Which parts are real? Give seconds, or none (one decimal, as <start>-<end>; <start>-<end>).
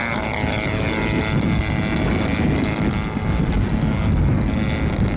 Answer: 0.0-5.2